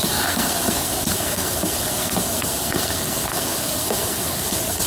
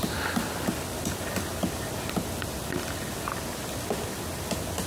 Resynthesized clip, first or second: first